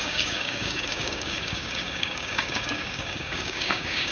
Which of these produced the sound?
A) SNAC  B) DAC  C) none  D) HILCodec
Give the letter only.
B